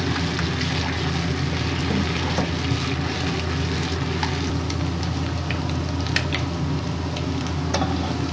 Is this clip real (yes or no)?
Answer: yes